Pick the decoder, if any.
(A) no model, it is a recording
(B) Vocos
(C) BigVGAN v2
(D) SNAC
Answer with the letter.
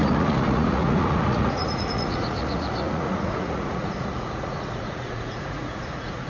B